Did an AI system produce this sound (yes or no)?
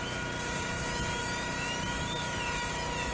no